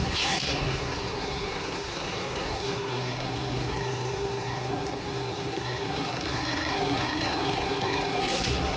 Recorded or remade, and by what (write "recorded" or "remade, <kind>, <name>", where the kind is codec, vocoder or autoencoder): remade, codec, SNAC